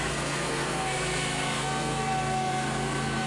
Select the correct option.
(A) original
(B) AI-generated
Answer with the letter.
B